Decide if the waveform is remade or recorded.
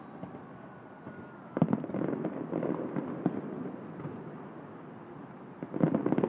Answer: recorded